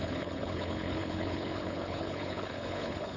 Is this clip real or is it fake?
fake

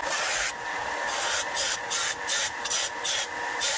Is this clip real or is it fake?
real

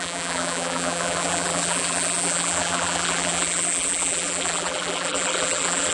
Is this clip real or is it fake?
fake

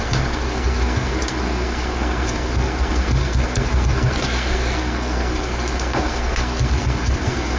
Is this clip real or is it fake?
fake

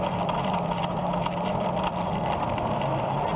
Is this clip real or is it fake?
fake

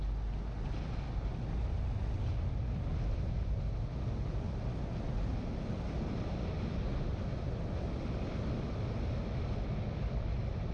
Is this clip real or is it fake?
real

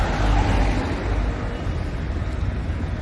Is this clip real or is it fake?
real